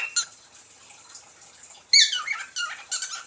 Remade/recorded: recorded